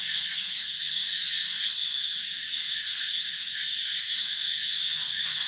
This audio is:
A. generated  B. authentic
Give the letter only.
A